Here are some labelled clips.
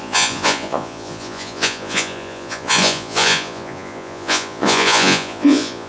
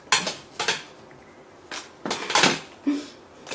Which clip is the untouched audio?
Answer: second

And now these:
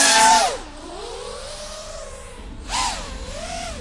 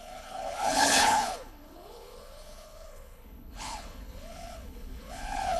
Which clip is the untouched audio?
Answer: first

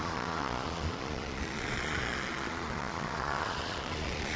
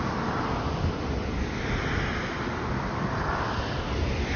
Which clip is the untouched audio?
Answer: second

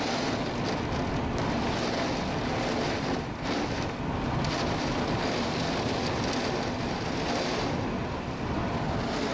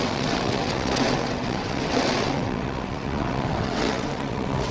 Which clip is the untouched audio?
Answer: first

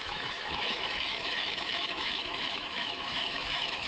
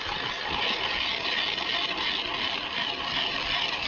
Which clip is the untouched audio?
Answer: second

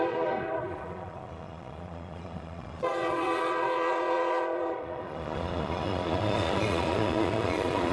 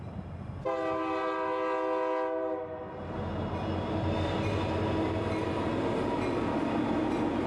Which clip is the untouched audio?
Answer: second